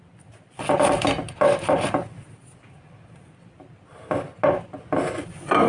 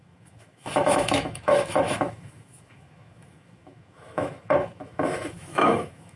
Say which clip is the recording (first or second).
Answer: first